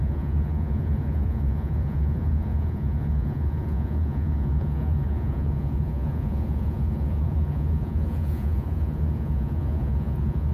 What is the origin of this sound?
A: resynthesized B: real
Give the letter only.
A